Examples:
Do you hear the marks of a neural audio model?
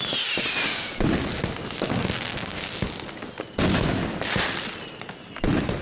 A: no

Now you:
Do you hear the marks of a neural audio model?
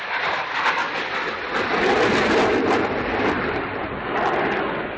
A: no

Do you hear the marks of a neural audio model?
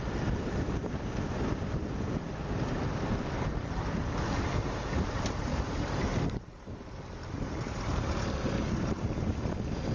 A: yes